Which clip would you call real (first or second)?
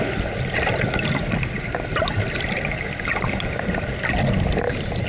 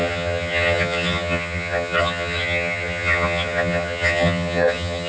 first